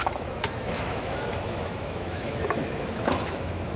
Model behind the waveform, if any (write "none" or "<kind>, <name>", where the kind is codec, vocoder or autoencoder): autoencoder, DAC-VAE